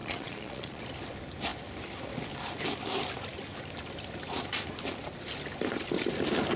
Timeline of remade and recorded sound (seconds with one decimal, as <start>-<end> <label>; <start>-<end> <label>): 0.0-0.8 remade; 0.8-6.6 recorded